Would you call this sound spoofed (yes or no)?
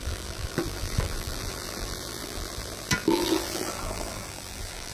yes